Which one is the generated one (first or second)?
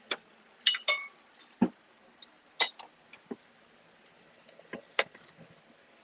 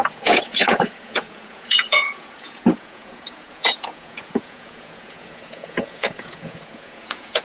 second